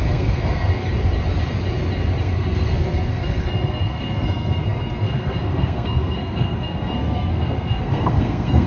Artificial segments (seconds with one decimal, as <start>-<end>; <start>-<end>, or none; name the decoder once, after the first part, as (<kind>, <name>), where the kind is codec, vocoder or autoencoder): 0.0-0.9 (codec, SNAC); 2.2-8.7